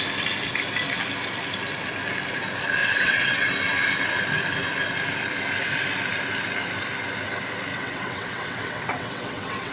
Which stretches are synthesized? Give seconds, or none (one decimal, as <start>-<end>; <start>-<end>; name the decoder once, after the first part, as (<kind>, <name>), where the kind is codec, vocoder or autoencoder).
2.8-3.5 (vocoder, WaveNeXt); 7.7-9.7